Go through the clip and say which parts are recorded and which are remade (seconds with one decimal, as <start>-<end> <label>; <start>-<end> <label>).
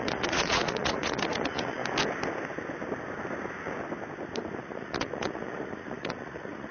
0.0-1.8 remade; 1.8-4.6 recorded; 4.6-6.7 remade